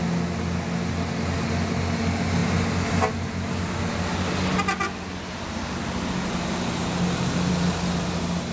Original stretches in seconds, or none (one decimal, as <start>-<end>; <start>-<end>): 0.0-8.5